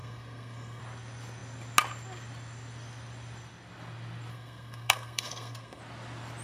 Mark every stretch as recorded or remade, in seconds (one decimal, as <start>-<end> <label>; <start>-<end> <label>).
0.0-0.8 remade; 0.8-4.3 recorded; 4.3-5.8 remade; 5.8-6.4 recorded